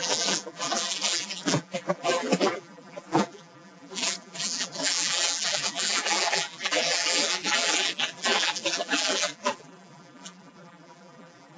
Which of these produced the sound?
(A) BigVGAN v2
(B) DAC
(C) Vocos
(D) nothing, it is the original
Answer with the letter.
A